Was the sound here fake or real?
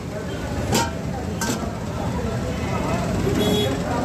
real